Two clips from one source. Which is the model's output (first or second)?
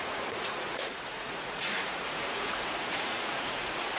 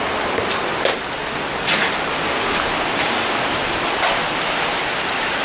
first